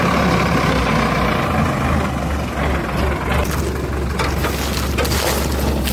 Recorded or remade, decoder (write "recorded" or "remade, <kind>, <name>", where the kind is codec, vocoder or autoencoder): recorded